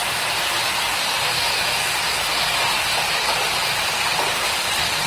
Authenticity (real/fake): real